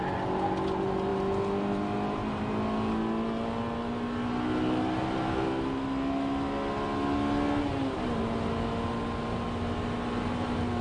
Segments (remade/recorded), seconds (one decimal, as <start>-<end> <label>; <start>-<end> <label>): 0.0-10.8 recorded